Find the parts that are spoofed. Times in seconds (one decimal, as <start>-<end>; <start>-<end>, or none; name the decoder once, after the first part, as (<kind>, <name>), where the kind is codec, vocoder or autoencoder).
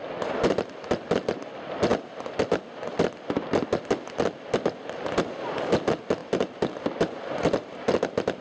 none